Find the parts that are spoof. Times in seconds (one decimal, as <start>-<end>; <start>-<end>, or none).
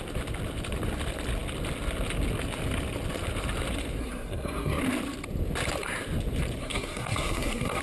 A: 4.0-4.8; 6.6-7.8